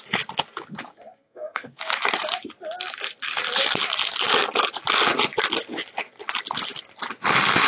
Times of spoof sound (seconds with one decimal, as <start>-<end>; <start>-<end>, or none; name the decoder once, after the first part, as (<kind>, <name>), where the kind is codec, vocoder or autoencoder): 0.9-1.8 (codec, SNAC)